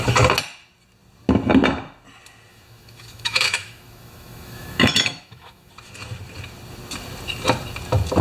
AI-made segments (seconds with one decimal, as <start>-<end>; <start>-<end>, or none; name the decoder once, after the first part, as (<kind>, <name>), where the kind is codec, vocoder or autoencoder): 2.5-5.7 (autoencoder, DAC-VAE)